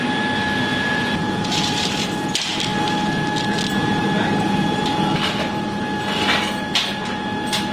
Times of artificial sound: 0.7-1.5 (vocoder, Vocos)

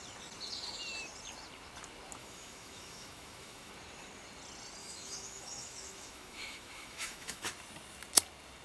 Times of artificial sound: 2.2-3.7 (autoencoder, DAC-VAE); 4.8-7.5

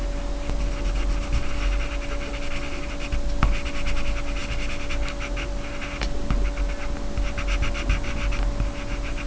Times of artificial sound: none

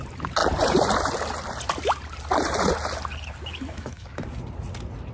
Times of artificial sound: 3.5-4.1 (codec, DAC)